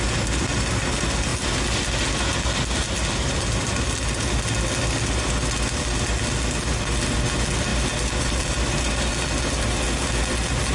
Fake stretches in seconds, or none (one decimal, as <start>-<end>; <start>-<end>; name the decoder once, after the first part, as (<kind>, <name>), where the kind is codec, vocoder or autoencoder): none